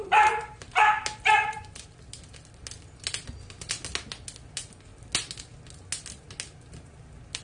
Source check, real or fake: real